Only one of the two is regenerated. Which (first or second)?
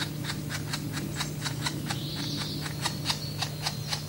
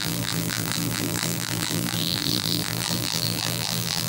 second